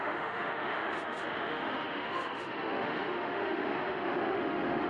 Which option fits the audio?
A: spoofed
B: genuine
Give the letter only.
A